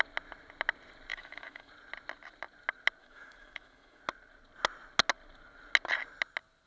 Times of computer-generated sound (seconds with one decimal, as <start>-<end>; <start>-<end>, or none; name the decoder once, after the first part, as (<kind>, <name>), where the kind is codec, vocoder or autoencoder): 1.1-1.7 (autoencoder, DAC-VAE); 3.0-4.0